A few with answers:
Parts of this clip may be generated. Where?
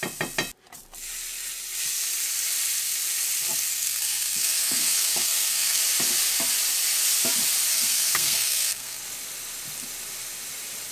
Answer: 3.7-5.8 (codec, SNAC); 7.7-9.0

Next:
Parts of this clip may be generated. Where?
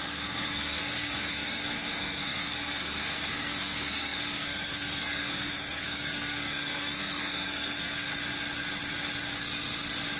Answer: 0.0-8.1 (codec, SNAC)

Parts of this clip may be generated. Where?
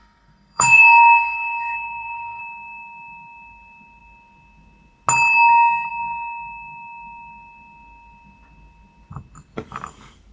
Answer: 0.0-2.4 (codec, SNAC)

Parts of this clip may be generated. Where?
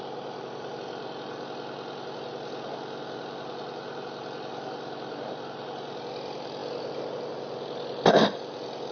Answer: none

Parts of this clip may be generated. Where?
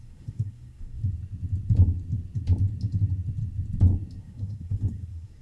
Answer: 0.0-1.0 (codec, SNAC); 4.2-5.4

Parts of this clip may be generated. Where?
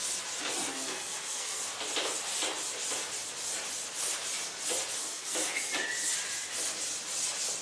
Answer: 0.7-1.6 (codec, SNAC); 5.0-5.7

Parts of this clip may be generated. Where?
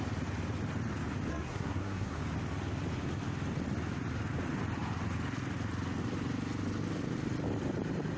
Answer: 1.3-2.2 (codec, SNAC)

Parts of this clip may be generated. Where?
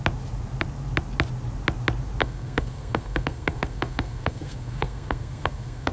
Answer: 2.2-5.9 (codec, SNAC)